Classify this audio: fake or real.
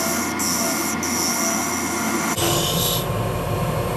real